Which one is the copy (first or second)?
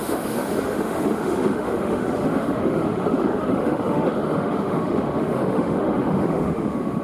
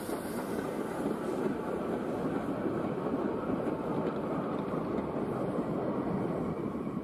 first